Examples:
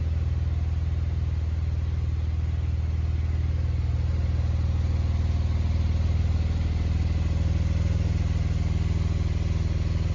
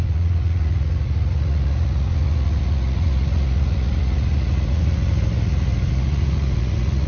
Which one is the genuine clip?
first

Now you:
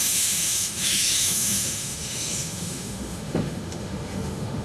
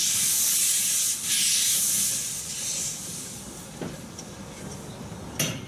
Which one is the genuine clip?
second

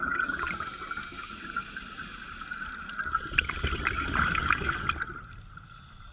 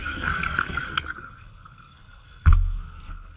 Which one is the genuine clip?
first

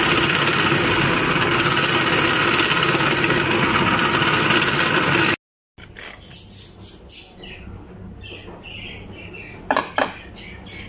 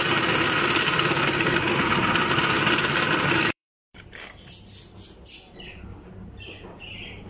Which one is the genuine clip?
first